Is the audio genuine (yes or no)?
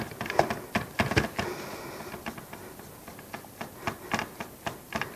yes